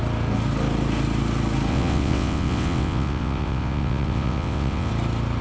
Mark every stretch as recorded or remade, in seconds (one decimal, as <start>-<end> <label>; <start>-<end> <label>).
0.0-1.7 recorded; 1.7-4.9 remade; 4.9-5.4 recorded